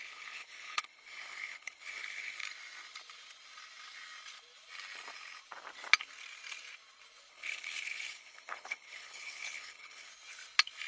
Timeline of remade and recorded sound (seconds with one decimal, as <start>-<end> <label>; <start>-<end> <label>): 0.0-2.4 remade; 2.4-7.3 recorded; 7.3-10.1 remade; 10.1-10.9 recorded